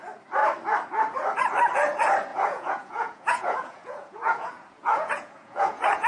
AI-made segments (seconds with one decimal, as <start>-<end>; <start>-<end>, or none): 2.3-6.1